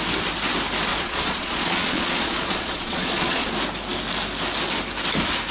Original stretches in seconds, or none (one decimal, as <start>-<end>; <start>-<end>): 0.0-0.9; 3.5-5.5